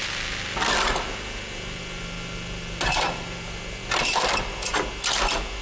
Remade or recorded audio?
recorded